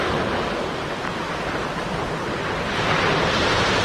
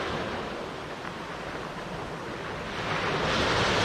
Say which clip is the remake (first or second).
first